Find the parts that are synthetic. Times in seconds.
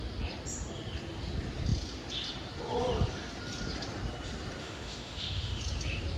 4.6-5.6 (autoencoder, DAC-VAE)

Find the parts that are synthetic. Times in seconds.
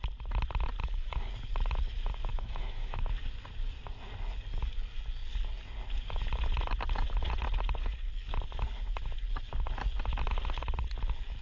0.8-1.3 (autoencoder, DAC-VAE); 2.3-3.0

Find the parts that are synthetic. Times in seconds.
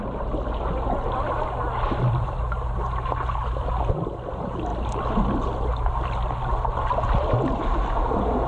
none